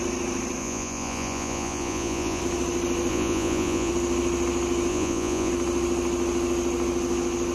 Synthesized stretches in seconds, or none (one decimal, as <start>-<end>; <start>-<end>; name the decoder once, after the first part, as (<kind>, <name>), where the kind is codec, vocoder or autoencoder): 0.6-2.4 (vocoder, Vocos); 3.1-3.9; 4.9-5.5